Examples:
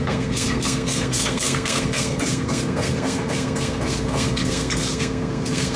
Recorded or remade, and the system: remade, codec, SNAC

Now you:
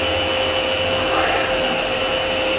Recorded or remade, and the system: recorded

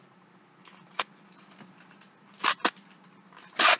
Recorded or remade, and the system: recorded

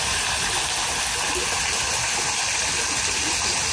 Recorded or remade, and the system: recorded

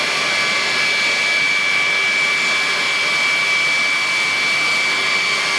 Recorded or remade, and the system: recorded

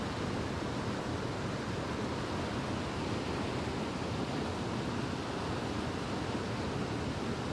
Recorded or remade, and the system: recorded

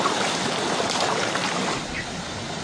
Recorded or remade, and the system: recorded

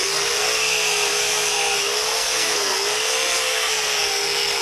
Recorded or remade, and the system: remade, codec, SNAC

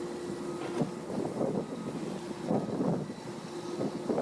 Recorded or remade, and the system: recorded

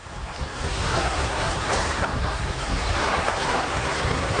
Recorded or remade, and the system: remade, codec, SNAC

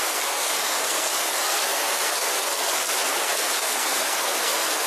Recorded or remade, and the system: remade, codec, SNAC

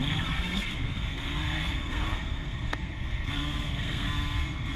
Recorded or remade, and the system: remade, codec, SNAC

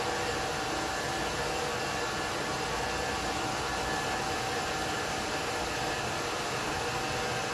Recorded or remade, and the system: recorded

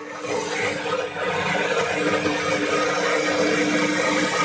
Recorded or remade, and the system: recorded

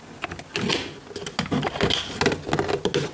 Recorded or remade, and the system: recorded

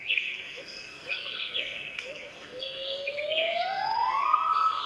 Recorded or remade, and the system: remade, codec, SNAC